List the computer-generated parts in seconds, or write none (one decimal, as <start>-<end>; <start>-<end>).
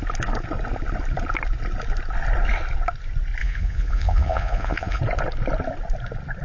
3.4-5.0